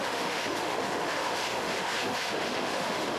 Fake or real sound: fake